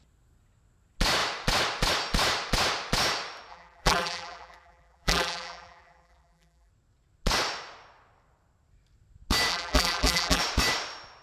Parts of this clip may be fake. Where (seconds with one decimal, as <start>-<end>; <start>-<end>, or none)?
3.5-6.7; 9.5-10.4